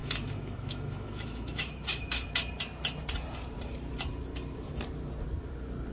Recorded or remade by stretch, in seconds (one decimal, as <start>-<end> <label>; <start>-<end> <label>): 0.0-2.3 remade; 2.3-5.9 recorded